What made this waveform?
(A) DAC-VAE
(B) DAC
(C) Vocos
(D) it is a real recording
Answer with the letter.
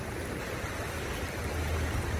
D